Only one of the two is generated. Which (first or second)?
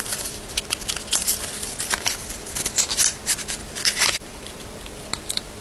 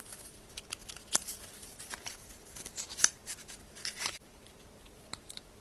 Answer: second